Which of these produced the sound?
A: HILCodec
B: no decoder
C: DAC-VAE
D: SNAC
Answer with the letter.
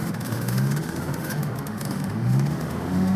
C